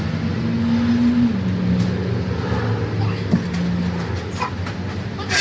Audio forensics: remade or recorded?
recorded